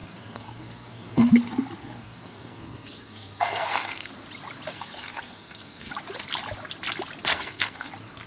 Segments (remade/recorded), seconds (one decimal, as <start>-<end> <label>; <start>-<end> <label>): 0.0-1.3 remade; 1.3-1.8 recorded; 1.8-4.1 remade; 4.1-4.7 recorded; 4.7-5.9 remade; 5.9-7.3 recorded; 7.3-7.9 remade; 7.9-8.3 recorded